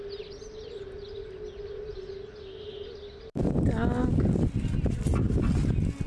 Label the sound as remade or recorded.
recorded